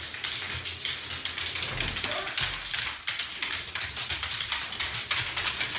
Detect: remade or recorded recorded